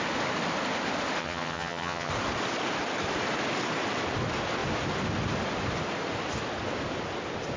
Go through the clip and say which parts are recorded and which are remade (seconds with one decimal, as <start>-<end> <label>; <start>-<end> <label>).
0.0-1.2 recorded; 1.2-2.1 remade; 2.1-7.6 recorded